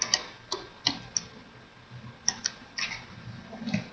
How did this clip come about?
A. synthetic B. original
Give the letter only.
B